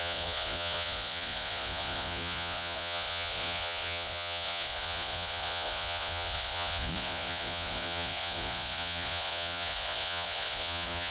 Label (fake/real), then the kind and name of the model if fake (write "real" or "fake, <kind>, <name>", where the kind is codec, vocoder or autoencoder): fake, vocoder, Vocos